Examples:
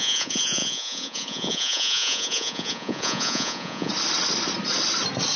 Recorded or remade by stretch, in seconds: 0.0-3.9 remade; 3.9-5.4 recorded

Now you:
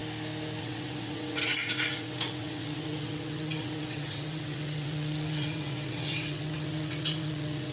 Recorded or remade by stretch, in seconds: 0.0-0.6 recorded; 0.6-7.7 remade

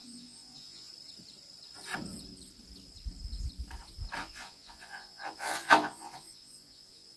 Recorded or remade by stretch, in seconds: 0.0-0.9 remade; 0.9-4.2 recorded; 4.2-7.2 remade

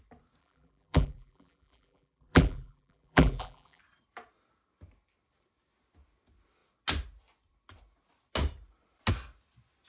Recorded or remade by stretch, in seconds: 0.0-0.4 recorded; 0.4-3.8 remade; 3.8-9.9 recorded

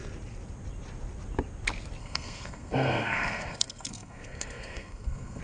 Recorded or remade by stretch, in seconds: 0.0-2.0 recorded; 2.0-5.4 remade